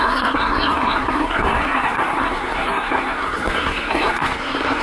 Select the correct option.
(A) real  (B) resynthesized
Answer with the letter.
B